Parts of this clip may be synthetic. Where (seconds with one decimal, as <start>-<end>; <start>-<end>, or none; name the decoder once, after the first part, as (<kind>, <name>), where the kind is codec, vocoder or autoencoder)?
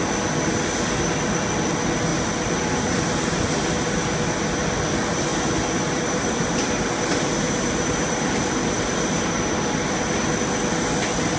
2.1-4.5 (vocoder, BigVGAN v2); 5.3-10.0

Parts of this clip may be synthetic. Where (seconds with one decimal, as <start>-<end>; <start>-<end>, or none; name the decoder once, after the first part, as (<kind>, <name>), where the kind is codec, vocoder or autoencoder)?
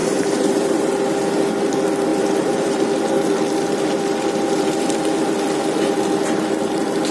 0.0-0.9 (vocoder, BigVGAN v2); 2.1-2.8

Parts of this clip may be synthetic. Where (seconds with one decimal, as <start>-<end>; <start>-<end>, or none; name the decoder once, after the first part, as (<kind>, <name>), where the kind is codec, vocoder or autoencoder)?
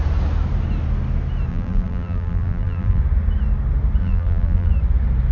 1.5-3.0 (vocoder, BigVGAN v2); 4.0-4.7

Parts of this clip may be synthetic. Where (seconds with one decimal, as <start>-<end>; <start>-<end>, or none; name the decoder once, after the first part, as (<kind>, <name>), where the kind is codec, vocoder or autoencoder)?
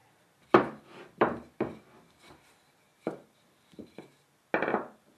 0.0-1.8 (vocoder, BigVGAN v2); 2.9-4.4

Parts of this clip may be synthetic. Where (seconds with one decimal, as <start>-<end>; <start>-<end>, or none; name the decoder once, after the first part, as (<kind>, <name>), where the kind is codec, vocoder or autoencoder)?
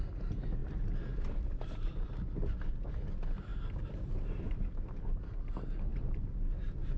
0.6-2.7 (vocoder, BigVGAN v2)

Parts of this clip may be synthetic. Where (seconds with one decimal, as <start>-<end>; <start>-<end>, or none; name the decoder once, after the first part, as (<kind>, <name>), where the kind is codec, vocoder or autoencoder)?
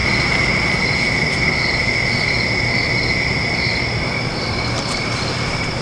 3.5-5.8 (vocoder, BigVGAN v2)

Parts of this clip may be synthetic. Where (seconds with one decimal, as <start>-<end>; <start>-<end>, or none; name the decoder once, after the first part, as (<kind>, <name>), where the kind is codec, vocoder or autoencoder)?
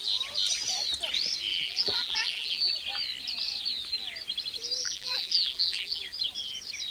1.5-2.7 (vocoder, BigVGAN v2); 4.8-6.0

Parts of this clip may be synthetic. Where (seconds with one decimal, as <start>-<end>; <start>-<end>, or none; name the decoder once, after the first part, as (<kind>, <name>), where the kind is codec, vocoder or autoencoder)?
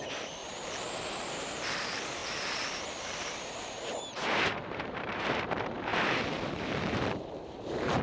0.0-0.4 (vocoder, BigVGAN v2); 1.1-2.2; 2.7-8.0